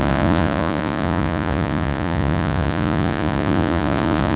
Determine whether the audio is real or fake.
fake